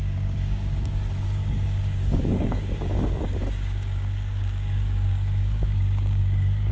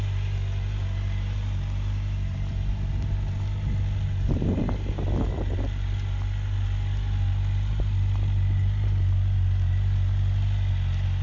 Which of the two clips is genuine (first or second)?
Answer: second